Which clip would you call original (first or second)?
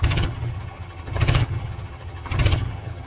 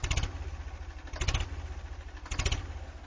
second